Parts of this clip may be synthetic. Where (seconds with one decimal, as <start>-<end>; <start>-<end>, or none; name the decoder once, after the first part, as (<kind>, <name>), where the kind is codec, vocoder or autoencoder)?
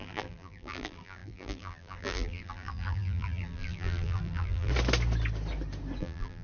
0.0-4.7 (vocoder, BigVGAN v2); 6.0-6.4